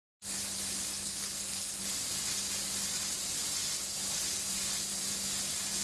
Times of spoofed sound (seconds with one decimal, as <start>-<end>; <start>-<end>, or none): 0.9-1.8